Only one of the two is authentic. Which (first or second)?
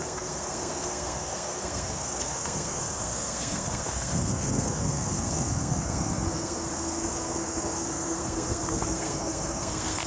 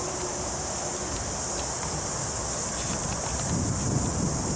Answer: second